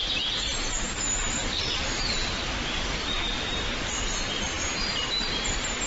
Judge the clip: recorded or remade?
remade